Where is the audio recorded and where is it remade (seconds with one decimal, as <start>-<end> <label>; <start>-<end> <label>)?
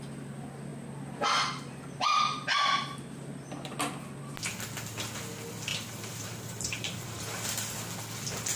0.0-5.7 recorded; 5.7-7.7 remade; 7.7-8.6 recorded